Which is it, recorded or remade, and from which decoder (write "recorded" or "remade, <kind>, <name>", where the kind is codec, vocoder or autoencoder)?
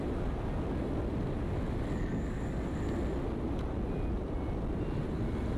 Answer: recorded